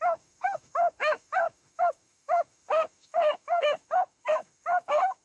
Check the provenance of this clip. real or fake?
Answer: fake